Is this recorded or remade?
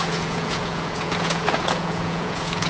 remade